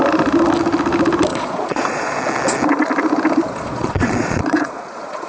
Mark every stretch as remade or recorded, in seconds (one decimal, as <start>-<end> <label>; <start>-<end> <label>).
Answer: 0.0-1.3 recorded; 1.3-2.2 remade; 2.2-3.4 recorded; 3.4-5.3 remade